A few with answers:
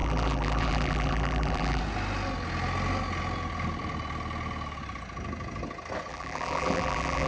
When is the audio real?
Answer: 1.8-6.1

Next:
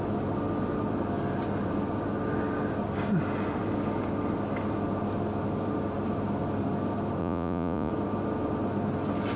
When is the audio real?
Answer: 0.0-7.2; 7.9-9.4

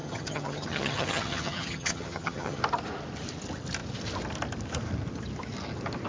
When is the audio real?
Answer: 2.6-6.1

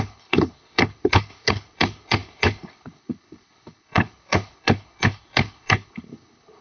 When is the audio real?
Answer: none

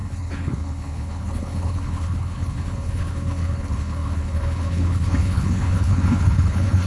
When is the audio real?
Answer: none